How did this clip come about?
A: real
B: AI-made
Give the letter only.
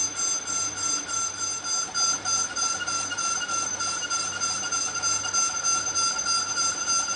A